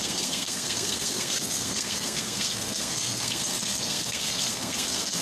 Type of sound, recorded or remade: remade